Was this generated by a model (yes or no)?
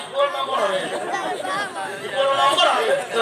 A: no